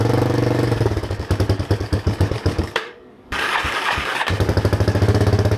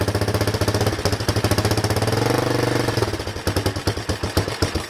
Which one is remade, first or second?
first